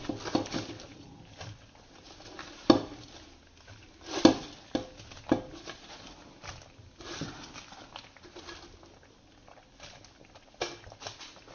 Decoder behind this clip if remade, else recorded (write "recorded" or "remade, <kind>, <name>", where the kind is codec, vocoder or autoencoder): recorded